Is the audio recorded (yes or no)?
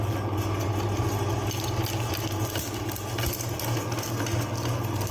yes